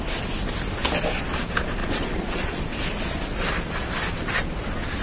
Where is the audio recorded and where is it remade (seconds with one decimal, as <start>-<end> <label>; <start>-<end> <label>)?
0.0-1.8 recorded; 1.8-2.6 remade; 2.6-5.0 recorded